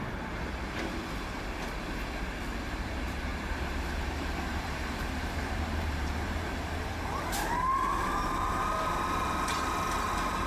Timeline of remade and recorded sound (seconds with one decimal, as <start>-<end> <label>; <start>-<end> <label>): 0.0-3.3 recorded; 3.3-6.5 remade; 6.5-10.5 recorded